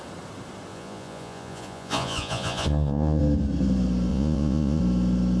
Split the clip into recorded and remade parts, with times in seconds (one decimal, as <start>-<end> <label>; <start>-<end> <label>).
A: 0.0-0.7 recorded; 0.7-3.2 remade; 3.2-4.1 recorded; 4.1-4.8 remade; 4.8-5.4 recorded